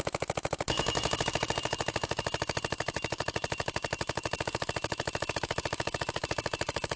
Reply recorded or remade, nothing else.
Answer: remade